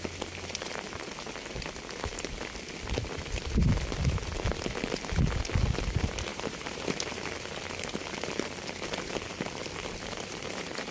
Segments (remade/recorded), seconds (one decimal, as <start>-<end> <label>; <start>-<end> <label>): 0.0-6.3 recorded; 6.3-7.1 remade; 7.1-10.9 recorded